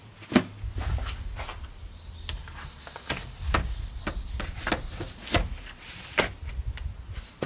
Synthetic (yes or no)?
no